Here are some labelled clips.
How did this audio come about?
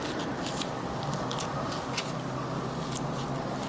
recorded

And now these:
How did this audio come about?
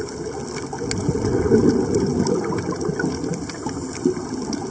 recorded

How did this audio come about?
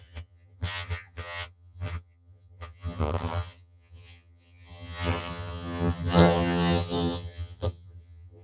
remade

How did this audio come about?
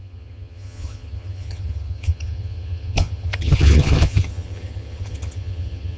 remade